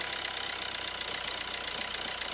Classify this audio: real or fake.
real